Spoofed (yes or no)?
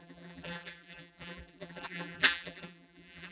yes